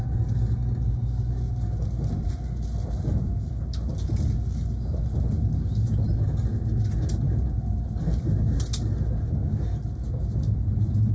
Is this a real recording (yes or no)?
yes